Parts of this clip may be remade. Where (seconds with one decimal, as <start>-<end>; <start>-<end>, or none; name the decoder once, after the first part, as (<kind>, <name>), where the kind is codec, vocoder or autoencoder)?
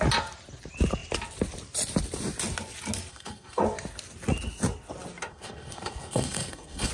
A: 3.1-3.6 (codec, SNAC); 5.3-6.9